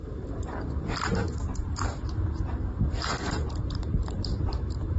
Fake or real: fake